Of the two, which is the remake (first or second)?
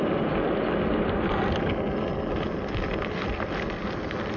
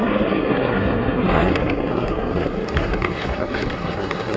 second